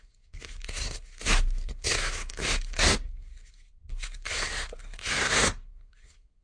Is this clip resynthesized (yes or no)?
yes